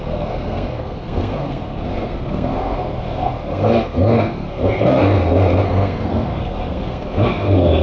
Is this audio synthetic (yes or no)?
yes